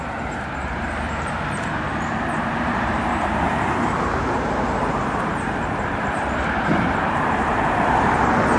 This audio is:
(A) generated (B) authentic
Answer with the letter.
A